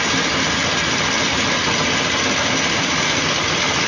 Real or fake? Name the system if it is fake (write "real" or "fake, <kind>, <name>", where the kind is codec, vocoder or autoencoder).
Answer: real